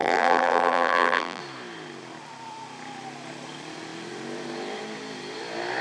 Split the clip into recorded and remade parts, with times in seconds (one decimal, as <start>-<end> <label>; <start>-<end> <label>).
0.0-1.4 remade; 1.4-5.8 recorded